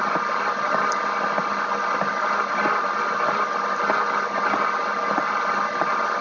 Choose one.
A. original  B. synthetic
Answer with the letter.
A